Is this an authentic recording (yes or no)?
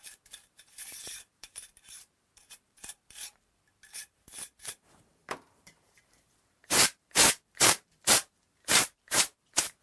no